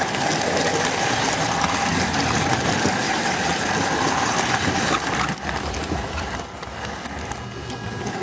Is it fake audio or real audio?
real